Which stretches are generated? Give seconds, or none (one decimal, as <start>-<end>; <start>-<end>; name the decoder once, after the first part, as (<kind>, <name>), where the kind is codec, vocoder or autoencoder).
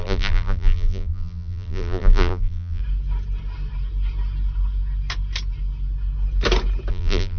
0.0-2.8 (vocoder, BigVGAN v2); 6.9-7.4